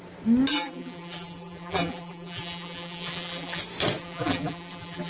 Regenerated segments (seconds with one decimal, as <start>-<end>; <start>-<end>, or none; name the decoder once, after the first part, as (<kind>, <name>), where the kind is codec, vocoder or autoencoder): 0.5-3.6 (vocoder, BigVGAN v2); 4.0-5.1